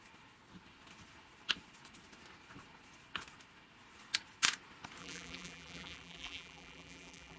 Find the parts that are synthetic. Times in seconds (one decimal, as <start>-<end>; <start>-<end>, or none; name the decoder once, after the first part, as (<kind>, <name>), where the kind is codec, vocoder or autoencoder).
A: 5.0-7.4 (vocoder, BigVGAN v2)